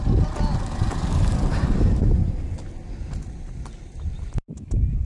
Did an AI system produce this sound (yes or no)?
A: no